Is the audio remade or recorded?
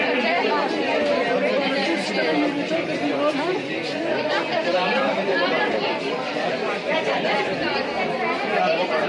recorded